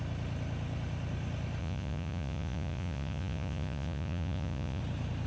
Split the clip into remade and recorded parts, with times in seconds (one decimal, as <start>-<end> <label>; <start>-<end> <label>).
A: 0.0-1.6 recorded; 1.6-4.8 remade; 4.8-5.3 recorded